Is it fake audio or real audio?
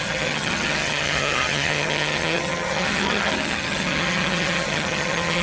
fake